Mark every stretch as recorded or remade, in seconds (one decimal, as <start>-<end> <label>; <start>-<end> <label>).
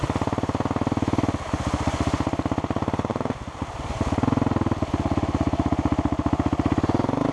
0.0-7.3 recorded